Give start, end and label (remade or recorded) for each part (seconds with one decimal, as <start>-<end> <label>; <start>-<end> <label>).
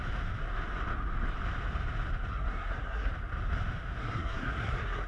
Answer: 0.0-2.3 recorded; 2.3-3.1 remade; 3.1-4.0 recorded; 4.0-5.1 remade